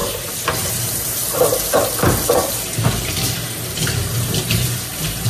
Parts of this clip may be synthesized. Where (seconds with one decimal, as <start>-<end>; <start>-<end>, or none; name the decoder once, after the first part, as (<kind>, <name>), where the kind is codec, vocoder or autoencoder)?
0.7-1.2 (vocoder, BigVGAN v2); 3.8-5.3